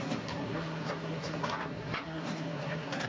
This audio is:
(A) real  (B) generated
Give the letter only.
B